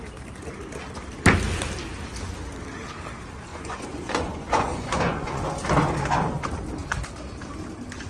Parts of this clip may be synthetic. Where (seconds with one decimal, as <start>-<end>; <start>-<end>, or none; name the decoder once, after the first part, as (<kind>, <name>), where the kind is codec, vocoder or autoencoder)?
3.5-5.4 (vocoder, Vocos)